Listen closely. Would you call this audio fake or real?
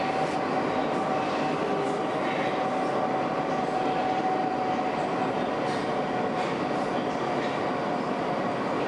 real